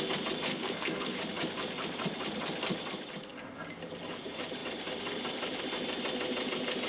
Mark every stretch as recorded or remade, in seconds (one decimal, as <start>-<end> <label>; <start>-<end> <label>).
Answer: 0.0-0.5 recorded; 0.5-1.2 remade; 1.2-6.9 recorded